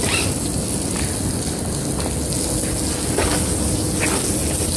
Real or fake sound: real